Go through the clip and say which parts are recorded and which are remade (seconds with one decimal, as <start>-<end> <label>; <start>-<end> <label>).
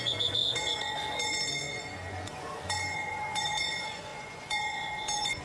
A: 0.0-5.4 remade